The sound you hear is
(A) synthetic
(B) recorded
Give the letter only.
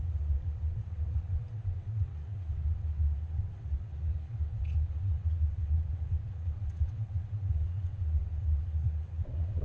A